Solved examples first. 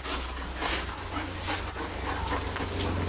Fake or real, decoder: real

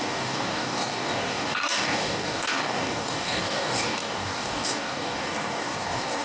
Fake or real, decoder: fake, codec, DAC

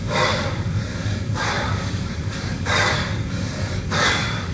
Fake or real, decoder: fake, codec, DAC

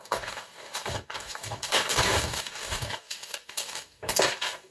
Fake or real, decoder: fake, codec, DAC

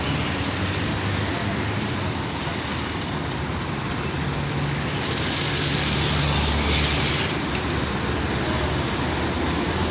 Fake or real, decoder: real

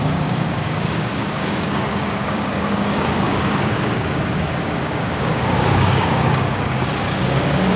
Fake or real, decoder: fake, codec, DAC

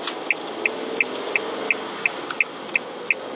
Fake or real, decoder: real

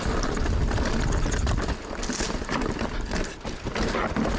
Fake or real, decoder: real